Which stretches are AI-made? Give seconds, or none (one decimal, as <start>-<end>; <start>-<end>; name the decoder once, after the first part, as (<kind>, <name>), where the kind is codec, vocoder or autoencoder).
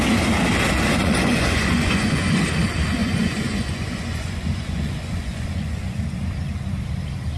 1.0-2.4 (vocoder, Vocos); 3.0-6.0